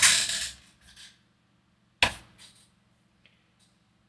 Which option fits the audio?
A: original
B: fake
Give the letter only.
A